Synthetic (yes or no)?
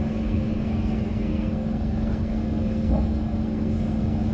yes